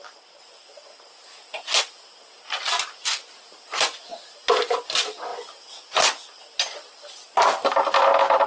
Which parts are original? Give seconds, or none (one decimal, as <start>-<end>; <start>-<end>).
0.0-8.5